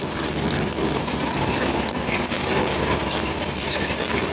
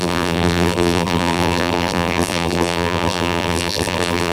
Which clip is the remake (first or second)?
second